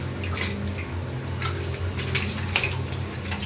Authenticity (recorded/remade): recorded